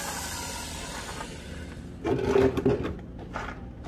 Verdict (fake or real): real